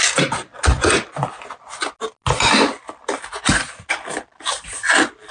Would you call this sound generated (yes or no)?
no